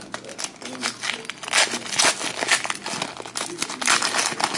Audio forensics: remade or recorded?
recorded